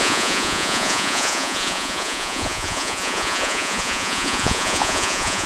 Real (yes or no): no